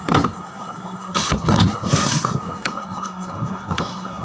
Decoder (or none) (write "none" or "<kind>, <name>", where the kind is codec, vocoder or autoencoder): codec, SNAC